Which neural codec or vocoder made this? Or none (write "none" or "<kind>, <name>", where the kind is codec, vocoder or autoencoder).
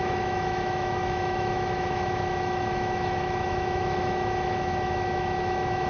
autoencoder, DAC-VAE